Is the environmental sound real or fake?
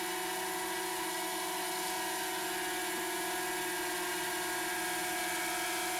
real